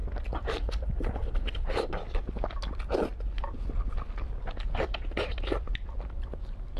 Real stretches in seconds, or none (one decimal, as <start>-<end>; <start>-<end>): 0.0-6.8